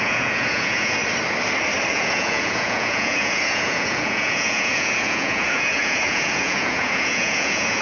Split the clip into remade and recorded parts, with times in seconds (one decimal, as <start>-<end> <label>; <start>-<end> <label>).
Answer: 0.0-1.0 remade; 1.0-1.9 recorded; 1.9-7.8 remade